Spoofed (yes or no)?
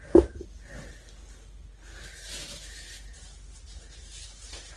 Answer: no